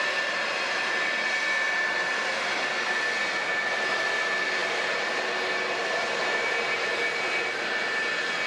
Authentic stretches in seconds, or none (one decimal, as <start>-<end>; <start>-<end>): 0.0-8.5